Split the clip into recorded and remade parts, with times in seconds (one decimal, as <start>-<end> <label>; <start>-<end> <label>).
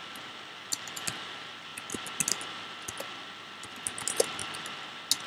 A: 0.0-5.3 recorded